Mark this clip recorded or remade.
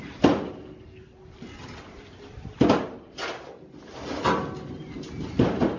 recorded